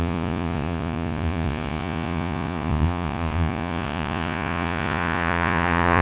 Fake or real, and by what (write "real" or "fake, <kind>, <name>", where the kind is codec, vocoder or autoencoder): fake, vocoder, Vocos